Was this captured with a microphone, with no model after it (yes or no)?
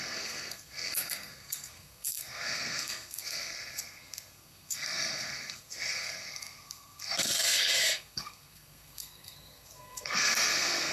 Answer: no